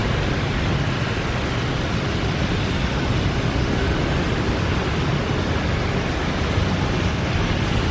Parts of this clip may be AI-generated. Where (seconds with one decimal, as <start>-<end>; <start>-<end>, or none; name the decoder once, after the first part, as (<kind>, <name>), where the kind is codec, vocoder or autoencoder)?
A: none